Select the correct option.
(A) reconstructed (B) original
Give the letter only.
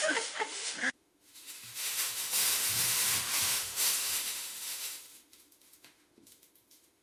A